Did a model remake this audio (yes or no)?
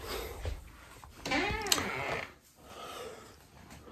no